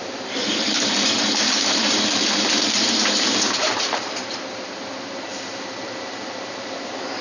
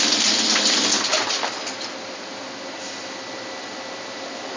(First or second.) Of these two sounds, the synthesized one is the first